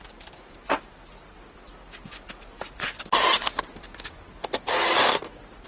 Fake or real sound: real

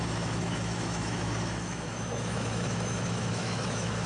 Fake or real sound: fake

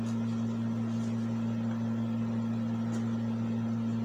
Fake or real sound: real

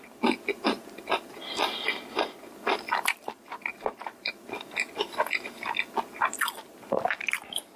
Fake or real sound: real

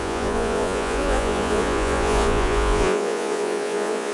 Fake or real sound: fake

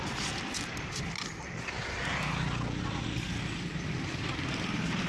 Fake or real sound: real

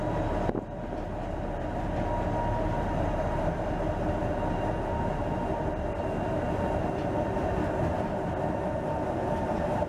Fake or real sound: real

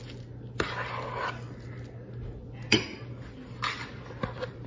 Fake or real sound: real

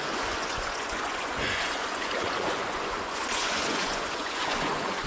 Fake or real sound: fake